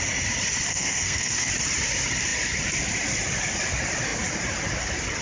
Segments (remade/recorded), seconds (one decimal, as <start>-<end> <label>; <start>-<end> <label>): 0.0-0.7 recorded; 0.7-1.5 remade; 1.5-5.2 recorded